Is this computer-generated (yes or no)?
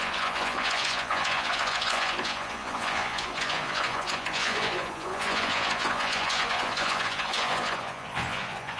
yes